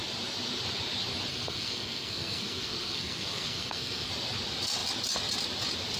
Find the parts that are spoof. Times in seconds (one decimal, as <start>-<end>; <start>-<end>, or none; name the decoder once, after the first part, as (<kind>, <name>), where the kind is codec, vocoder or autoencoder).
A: 1.3-4.1 (codec, SNAC)